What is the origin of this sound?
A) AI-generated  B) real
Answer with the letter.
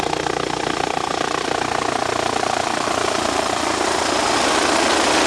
B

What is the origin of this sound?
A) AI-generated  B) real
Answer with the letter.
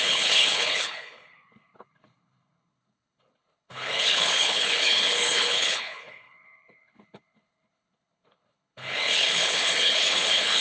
A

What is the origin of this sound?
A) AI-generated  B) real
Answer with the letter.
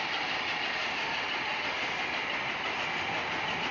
B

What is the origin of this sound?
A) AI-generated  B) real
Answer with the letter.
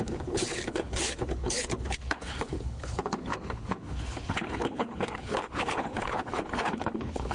A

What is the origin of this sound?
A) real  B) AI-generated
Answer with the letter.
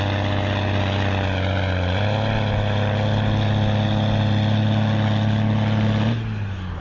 A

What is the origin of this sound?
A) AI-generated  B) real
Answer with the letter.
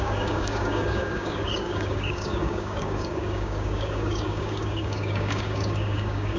A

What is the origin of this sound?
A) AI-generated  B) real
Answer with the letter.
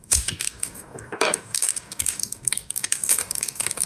A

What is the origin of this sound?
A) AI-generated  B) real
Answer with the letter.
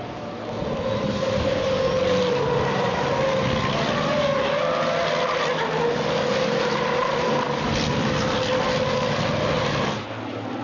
B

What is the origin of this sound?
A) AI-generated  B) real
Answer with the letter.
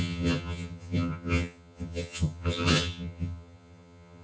A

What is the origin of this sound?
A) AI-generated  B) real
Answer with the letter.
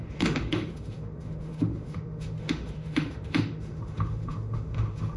A